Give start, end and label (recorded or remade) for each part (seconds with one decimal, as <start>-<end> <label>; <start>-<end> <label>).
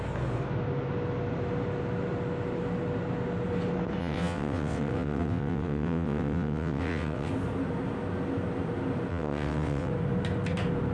0.0-4.0 recorded; 4.0-7.3 remade; 7.3-9.1 recorded; 9.1-9.9 remade; 9.9-10.9 recorded